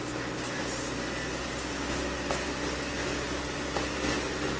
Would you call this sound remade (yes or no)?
no